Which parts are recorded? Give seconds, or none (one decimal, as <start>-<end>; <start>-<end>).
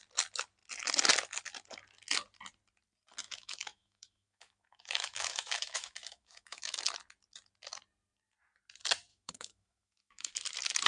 0.0-3.2; 6.8-9.1; 10.3-10.9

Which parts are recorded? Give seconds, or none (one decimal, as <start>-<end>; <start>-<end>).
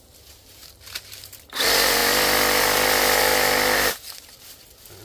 0.0-5.0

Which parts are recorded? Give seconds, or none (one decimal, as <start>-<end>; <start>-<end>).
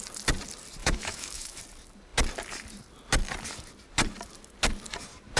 0.0-0.8; 1.6-5.4